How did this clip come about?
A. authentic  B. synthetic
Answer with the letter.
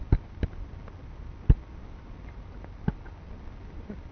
A